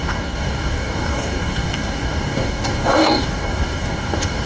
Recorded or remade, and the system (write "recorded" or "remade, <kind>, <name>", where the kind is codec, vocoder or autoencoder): remade, codec, DAC